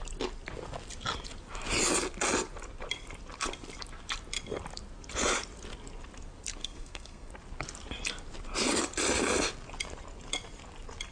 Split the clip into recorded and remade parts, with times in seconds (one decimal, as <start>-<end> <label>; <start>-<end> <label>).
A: 0.0-6.6 recorded; 6.6-7.3 remade; 7.3-11.1 recorded